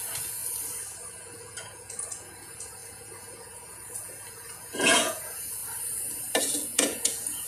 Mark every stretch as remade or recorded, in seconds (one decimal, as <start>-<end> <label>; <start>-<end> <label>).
0.0-0.4 remade; 0.4-1.1 recorded; 1.1-5.6 remade; 5.6-6.4 recorded; 6.4-7.5 remade